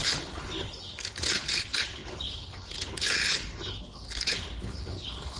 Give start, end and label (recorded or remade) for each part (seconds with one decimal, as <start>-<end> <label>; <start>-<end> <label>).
0.0-5.4 remade